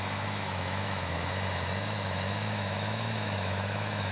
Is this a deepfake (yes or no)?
yes